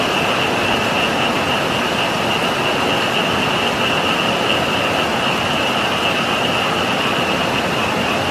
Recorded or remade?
recorded